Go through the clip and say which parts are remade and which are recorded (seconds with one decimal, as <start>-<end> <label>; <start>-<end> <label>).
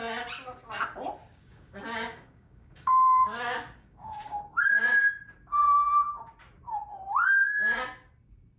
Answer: 0.0-1.2 recorded; 1.2-4.7 remade; 4.7-8.6 recorded